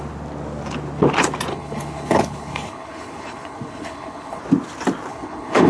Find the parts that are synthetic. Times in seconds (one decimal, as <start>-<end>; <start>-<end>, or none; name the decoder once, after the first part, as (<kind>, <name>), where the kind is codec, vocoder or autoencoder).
1.5-4.4 (codec, HILCodec); 5.1-5.7